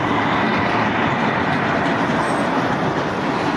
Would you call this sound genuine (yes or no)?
yes